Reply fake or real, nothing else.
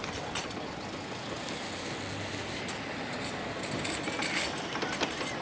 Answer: real